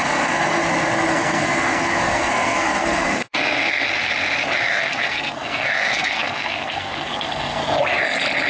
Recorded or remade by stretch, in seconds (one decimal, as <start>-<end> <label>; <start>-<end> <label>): 0.0-0.6 remade; 0.6-1.1 recorded; 1.1-3.8 remade; 3.8-4.7 recorded; 4.7-7.6 remade; 7.6-8.5 recorded

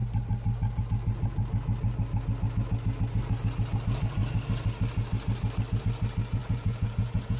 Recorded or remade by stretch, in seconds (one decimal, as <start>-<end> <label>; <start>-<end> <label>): 0.0-6.4 recorded; 6.4-7.4 remade